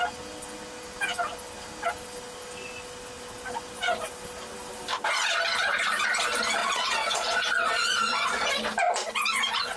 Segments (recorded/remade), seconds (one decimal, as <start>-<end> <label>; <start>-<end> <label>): 0.0-6.6 recorded; 6.6-8.5 remade; 8.5-9.8 recorded